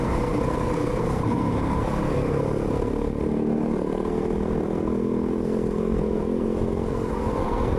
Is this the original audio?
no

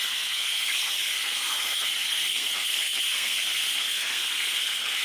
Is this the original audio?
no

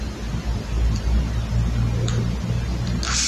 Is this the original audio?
yes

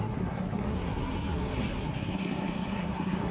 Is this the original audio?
no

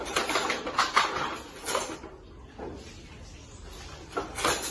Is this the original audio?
yes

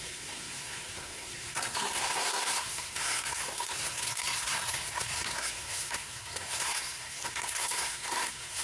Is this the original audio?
no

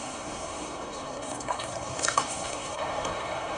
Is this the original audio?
no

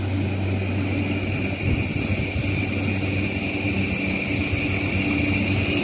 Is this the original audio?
yes